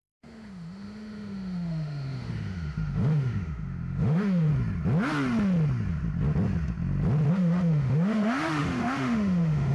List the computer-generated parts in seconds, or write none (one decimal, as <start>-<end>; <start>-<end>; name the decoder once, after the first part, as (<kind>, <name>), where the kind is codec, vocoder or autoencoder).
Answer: 0.0-4.5 (autoencoder, DAC-VAE); 7.3-9.7